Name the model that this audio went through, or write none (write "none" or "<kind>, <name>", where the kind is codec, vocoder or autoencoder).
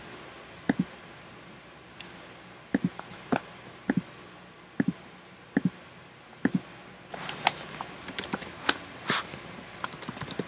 none